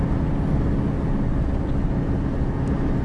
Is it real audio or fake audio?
real